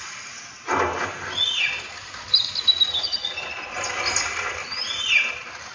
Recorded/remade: recorded